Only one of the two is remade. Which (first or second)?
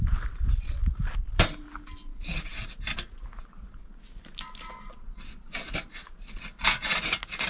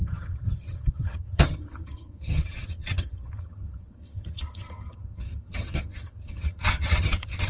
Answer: second